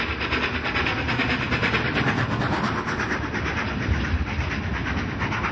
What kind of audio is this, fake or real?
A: real